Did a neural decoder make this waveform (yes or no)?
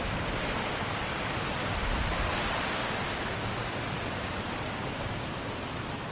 no